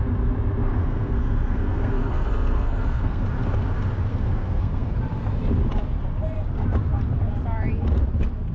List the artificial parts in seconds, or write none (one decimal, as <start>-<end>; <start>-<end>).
0.8-3.2; 4.1-4.9